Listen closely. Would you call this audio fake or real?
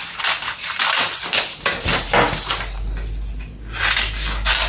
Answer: real